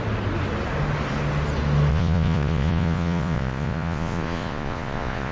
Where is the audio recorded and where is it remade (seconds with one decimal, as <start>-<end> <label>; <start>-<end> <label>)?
0.0-1.9 recorded; 1.9-5.3 remade